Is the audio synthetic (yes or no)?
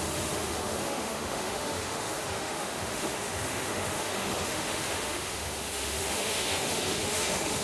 yes